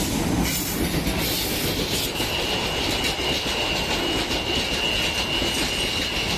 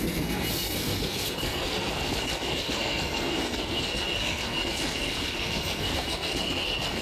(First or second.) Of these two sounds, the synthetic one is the second